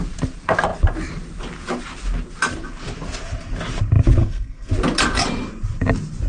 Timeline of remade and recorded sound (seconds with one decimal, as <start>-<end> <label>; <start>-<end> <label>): 0.0-4.2 recorded; 4.2-4.7 remade; 4.7-6.3 recorded